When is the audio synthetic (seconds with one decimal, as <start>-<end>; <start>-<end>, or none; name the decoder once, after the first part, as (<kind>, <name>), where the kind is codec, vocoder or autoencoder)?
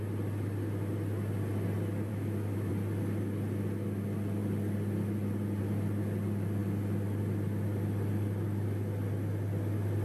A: 2.1-2.7 (autoencoder, DAC-VAE)